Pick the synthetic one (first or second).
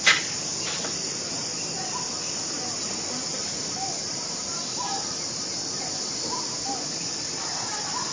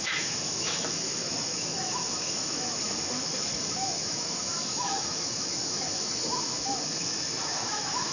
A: second